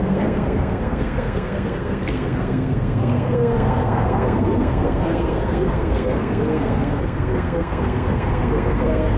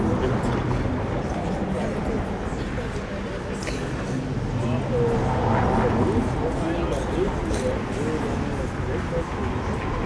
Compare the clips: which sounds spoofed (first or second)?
first